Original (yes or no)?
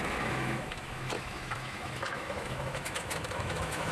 no